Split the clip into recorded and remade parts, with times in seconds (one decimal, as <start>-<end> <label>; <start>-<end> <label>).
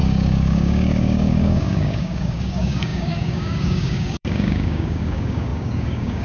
0.0-6.2 remade